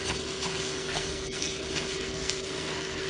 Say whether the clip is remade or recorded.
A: remade